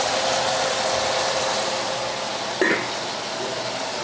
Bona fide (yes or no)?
yes